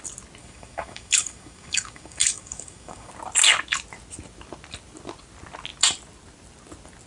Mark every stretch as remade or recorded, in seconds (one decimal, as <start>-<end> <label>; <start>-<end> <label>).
0.0-0.4 recorded; 0.4-3.1 remade; 3.1-7.1 recorded